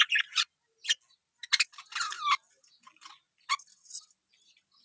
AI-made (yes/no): no